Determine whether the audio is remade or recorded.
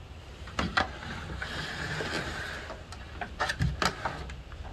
recorded